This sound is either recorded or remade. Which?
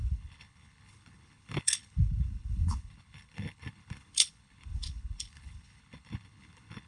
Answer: remade